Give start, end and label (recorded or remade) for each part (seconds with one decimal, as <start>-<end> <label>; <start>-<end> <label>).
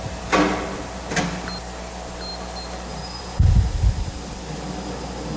0.0-5.4 recorded